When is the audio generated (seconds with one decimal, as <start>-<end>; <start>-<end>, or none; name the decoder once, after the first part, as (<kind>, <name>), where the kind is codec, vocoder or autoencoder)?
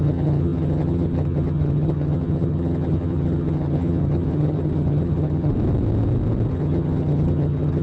0.0-5.5 (vocoder, HiFi-GAN); 6.5-7.8